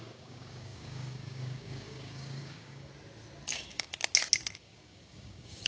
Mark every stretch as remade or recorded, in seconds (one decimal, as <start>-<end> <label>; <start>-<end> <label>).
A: 0.0-2.9 remade; 2.9-3.5 recorded; 3.5-3.9 remade; 3.9-4.6 recorded; 4.6-5.7 remade